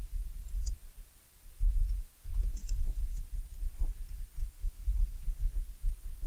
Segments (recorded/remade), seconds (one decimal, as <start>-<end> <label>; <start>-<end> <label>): 0.0-2.6 recorded; 2.6-3.2 remade; 3.2-4.4 recorded; 4.4-5.2 remade; 5.2-6.3 recorded